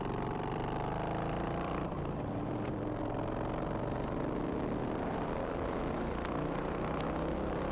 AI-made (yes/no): yes